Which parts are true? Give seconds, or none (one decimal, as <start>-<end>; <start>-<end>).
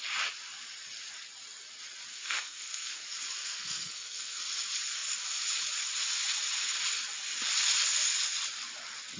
0.0-2.1; 3.0-3.4; 4.4-9.2